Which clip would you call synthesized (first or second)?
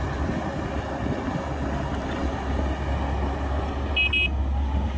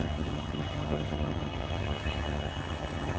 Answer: second